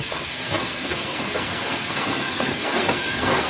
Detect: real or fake fake